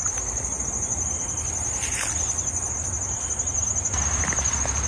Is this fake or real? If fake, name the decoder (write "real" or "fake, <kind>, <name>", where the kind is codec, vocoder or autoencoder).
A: real